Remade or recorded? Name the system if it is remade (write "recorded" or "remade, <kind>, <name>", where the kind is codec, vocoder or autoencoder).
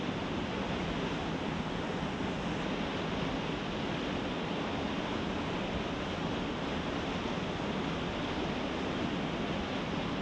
recorded